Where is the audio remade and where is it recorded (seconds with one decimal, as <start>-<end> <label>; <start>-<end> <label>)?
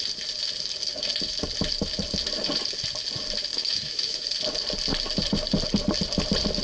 0.0-3.5 recorded; 3.5-4.3 remade; 4.3-6.6 recorded